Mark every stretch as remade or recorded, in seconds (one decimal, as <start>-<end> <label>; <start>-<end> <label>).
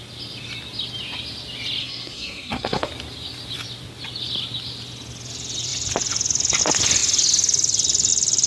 0.0-1.8 recorded; 1.8-2.9 remade; 2.9-8.5 recorded